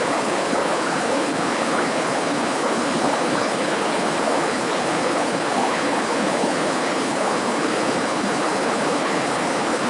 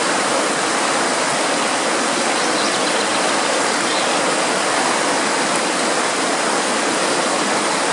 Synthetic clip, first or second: first